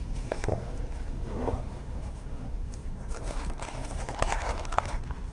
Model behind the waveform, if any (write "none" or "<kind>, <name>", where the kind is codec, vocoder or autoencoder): codec, SNAC